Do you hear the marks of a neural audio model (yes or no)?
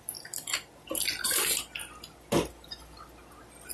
no